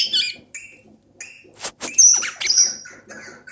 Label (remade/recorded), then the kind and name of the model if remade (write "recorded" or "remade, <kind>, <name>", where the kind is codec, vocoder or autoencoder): recorded